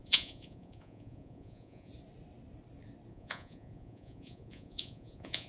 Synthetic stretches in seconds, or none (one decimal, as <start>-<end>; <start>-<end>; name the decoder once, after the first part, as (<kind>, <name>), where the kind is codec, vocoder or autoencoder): 0.0-1.9 (vocoder, Vocos); 3.1-5.5